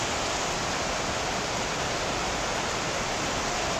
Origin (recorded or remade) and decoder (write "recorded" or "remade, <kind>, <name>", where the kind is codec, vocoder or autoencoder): recorded